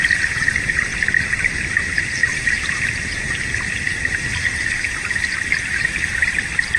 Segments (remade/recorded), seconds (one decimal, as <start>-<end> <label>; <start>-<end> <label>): 0.0-6.8 recorded